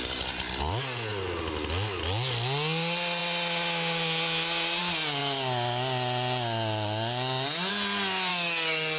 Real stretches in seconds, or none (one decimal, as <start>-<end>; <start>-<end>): 0.0-8.3